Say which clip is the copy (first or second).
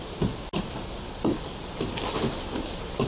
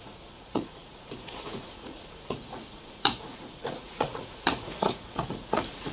second